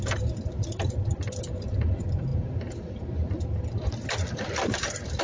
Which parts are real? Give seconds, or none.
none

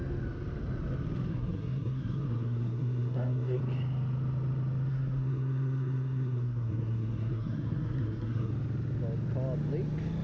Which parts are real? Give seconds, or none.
0.0-1.3; 3.6-4.9; 8.5-10.2

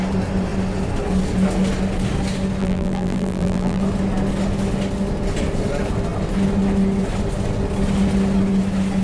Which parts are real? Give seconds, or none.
0.0-2.6; 3.8-9.0

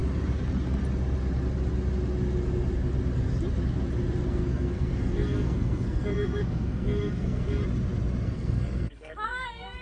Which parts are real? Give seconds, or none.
0.0-4.3; 7.6-8.2

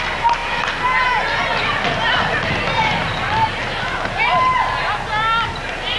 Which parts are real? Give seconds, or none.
0.0-6.0

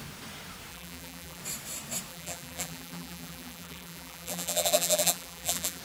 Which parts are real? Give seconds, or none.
0.0-0.7; 1.4-2.1